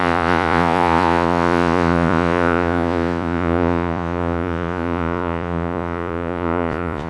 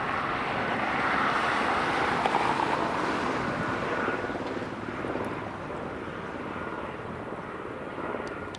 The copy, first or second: first